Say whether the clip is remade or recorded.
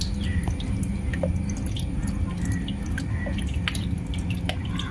recorded